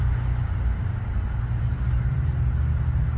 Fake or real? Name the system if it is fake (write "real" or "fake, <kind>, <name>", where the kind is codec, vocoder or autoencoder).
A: real